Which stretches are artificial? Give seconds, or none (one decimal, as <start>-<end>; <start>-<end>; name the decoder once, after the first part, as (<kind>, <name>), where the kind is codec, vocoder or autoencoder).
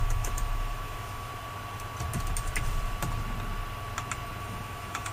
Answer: 0.0-1.3 (autoencoder, DAC-VAE); 4.4-5.1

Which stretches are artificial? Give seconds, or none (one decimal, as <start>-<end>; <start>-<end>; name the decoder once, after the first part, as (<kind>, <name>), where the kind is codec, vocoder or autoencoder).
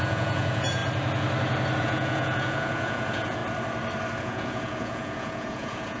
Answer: 0.0-0.8 (vocoder, Vocos); 1.8-3.4; 4.2-6.0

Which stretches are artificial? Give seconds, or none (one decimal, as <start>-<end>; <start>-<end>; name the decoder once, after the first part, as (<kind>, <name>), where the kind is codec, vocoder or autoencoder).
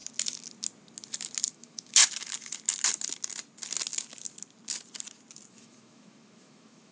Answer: 1.5-2.0 (autoencoder, DAC-VAE); 5.5-6.9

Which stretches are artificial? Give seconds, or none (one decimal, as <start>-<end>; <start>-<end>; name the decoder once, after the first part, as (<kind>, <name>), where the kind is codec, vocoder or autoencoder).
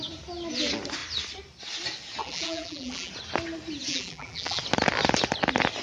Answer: 2.2-3.1 (vocoder, BigVGAN v2); 3.9-4.6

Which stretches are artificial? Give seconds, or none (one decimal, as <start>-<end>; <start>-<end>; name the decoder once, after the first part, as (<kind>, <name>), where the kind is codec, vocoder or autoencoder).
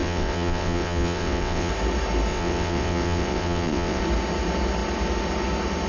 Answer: 0.0-1.7 (vocoder, WaveNeXt); 2.3-4.0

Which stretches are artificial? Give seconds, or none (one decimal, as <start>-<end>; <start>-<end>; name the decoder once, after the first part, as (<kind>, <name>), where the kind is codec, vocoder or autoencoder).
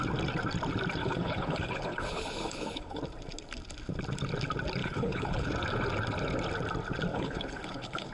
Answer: 1.0-3.0 (codec, HILCodec); 4.8-5.5; 7.1-8.1